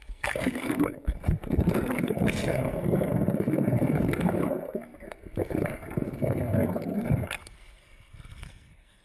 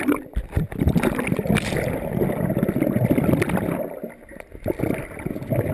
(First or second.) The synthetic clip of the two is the first